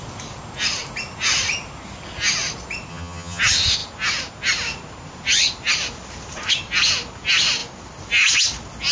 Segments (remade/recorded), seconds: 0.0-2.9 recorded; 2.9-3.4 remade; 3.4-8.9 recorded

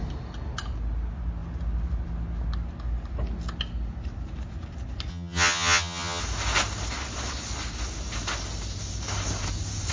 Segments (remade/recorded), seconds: 0.0-5.1 recorded; 5.1-6.2 remade; 6.2-9.9 recorded

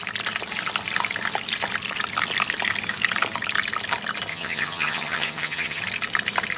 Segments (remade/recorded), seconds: 0.0-4.3 recorded; 4.3-5.8 remade; 5.8-6.6 recorded

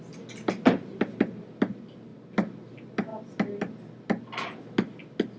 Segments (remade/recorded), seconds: 0.0-5.4 recorded

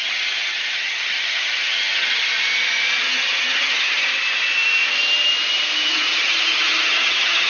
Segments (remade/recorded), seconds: 0.0-2.2 remade; 2.2-3.0 recorded; 3.0-4.1 remade; 4.1-5.9 recorded; 5.9-7.5 remade

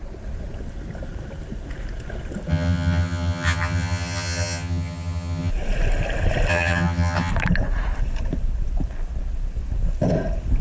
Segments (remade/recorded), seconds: 0.0-2.5 recorded; 2.5-5.5 remade; 5.5-6.5 recorded; 6.5-7.3 remade; 7.3-10.6 recorded

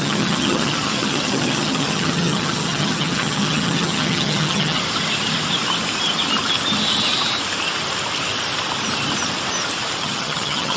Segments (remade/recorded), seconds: 0.0-4.8 remade; 4.8-10.0 recorded; 10.0-10.8 remade

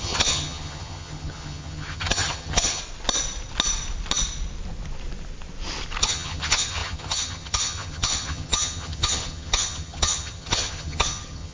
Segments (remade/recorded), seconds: 0.0-2.8 remade; 2.8-6.0 recorded; 6.0-11.5 remade